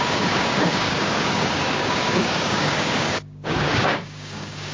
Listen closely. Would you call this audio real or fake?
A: fake